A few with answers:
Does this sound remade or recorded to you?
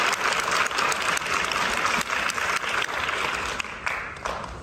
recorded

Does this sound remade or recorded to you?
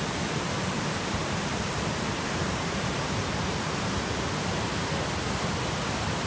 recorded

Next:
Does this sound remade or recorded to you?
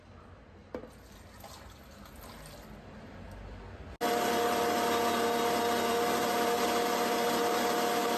recorded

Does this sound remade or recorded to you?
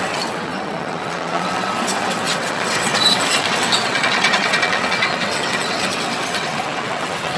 remade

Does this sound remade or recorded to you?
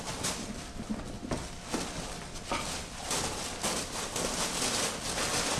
recorded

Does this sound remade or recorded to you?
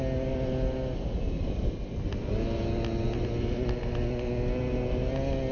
recorded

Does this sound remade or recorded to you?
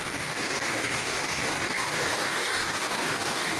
remade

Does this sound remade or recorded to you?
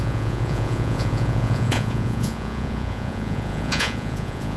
remade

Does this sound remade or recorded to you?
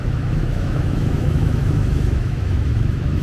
remade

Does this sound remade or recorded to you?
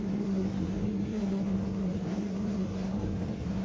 remade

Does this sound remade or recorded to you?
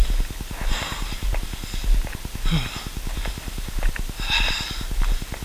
recorded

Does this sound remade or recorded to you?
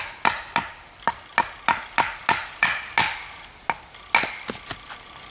recorded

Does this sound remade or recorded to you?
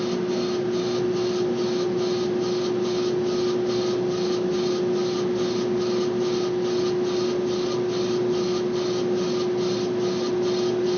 recorded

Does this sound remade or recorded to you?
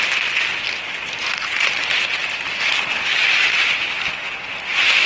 recorded